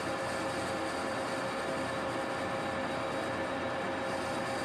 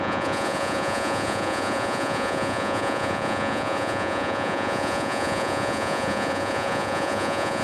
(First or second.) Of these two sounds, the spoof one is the second